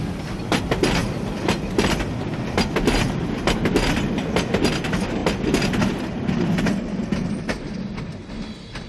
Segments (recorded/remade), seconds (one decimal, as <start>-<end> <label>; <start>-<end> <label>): 0.0-8.9 recorded